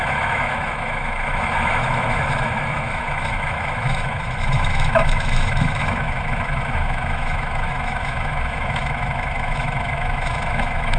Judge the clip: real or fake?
fake